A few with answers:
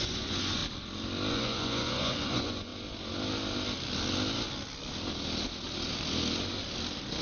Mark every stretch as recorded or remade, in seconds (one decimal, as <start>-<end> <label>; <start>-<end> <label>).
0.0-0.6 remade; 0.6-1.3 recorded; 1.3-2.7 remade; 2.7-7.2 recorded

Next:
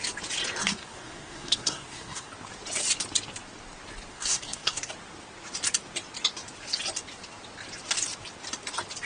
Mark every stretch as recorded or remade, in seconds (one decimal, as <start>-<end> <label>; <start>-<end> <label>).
0.0-0.6 recorded; 0.6-2.3 remade; 2.3-4.1 recorded; 4.1-4.9 remade; 4.9-9.1 recorded

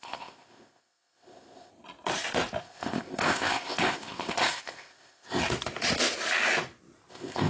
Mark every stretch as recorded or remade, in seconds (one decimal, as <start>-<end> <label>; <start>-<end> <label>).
0.0-1.7 remade; 1.7-2.6 recorded; 2.6-5.4 remade; 5.4-7.1 recorded; 7.1-7.5 remade